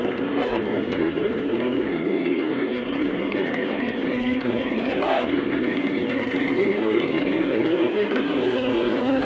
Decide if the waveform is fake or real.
fake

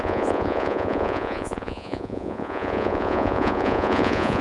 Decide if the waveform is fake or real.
fake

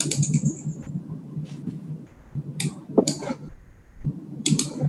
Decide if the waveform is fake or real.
fake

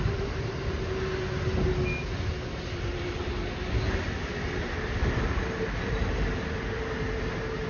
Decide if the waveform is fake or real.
real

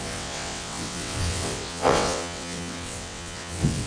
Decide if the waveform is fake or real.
fake